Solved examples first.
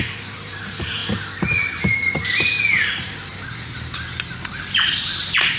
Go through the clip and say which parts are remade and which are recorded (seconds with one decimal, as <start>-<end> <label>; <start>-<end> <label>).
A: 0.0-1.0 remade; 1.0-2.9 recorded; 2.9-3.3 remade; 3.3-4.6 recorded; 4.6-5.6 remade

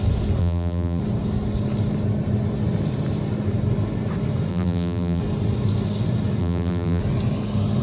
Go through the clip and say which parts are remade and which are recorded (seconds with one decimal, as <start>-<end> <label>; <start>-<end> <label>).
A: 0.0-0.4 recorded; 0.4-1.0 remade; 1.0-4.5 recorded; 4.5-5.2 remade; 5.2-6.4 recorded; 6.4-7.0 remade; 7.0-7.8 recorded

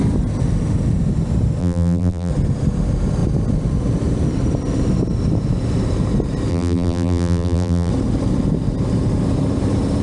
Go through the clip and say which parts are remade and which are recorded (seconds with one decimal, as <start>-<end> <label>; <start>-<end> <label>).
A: 0.0-1.6 recorded; 1.6-2.3 remade; 2.3-6.5 recorded; 6.5-7.9 remade; 7.9-10.0 recorded

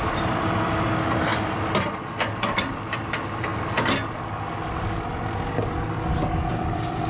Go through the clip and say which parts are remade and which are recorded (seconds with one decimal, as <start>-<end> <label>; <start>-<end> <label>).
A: 0.0-3.5 remade; 3.5-6.2 recorded; 6.2-7.1 remade

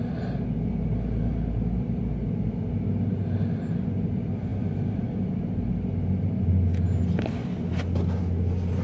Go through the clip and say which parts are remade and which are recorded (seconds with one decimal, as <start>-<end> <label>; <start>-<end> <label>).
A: 0.0-8.8 recorded

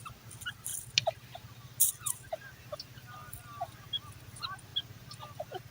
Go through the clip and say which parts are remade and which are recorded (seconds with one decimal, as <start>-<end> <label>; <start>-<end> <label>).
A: 0.0-5.7 recorded

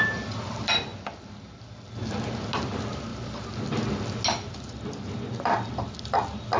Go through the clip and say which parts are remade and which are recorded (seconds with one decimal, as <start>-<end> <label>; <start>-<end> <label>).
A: 0.0-6.6 recorded